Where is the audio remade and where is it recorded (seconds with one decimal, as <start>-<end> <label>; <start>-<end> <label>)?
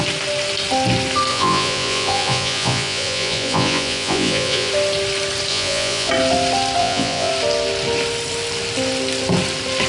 0.0-1.3 recorded; 1.3-4.7 remade; 4.7-5.5 recorded; 5.5-6.1 remade; 6.1-6.8 recorded; 6.8-7.3 remade; 7.3-9.9 recorded